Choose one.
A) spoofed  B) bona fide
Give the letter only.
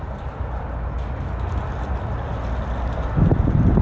B